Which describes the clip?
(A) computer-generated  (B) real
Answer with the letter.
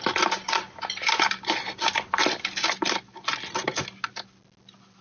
B